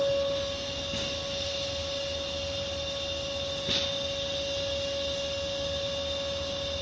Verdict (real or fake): real